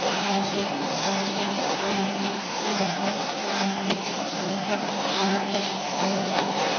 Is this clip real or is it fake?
fake